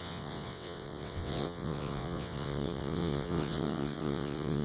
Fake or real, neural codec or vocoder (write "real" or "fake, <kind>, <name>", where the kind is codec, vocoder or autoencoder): fake, vocoder, WaveNeXt